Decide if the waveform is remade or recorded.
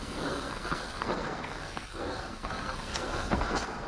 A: remade